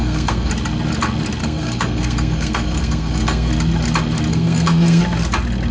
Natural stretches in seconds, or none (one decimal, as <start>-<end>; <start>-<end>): 0.5-1.4; 3.5-4.3; 5.0-5.7